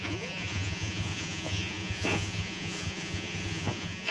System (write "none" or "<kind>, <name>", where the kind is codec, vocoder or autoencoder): vocoder, Vocos